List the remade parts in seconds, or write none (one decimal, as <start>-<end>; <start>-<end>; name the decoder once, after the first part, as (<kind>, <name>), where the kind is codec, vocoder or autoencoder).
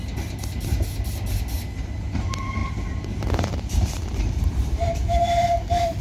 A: 2.6-6.0 (vocoder, BigVGAN v2)